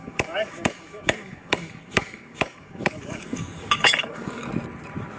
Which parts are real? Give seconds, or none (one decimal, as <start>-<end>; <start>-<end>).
4.5-5.2

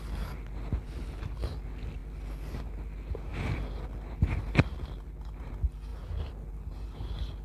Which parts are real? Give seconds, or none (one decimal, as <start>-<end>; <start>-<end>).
0.0-7.4

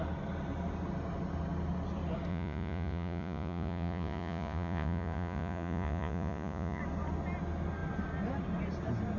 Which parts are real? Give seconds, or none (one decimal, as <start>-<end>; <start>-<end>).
0.0-2.3; 6.8-9.2

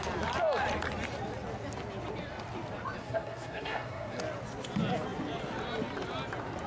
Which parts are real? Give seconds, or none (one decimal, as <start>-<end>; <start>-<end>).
0.0-3.0; 4.2-6.7

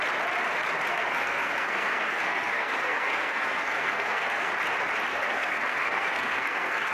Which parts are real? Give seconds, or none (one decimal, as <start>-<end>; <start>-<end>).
0.0-0.9; 4.5-5.1

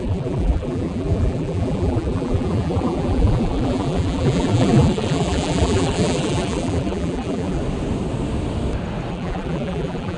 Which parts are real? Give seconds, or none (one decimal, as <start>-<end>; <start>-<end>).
7.6-9.1

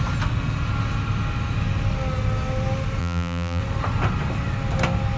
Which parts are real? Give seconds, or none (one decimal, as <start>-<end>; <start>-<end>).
0.0-3.0; 3.6-5.2

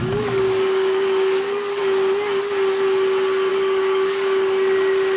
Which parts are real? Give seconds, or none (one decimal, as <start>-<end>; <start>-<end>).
1.8-3.5